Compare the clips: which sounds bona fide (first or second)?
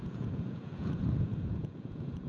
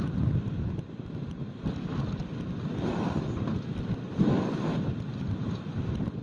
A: second